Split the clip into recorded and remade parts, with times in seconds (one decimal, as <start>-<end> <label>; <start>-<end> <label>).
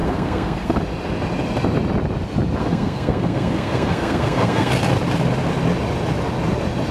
0.0-0.8 remade; 0.8-2.6 recorded; 2.6-4.7 remade; 4.7-6.9 recorded